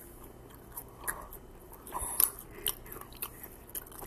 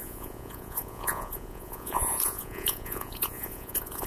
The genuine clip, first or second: first